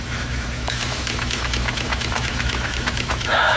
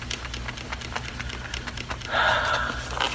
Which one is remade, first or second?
first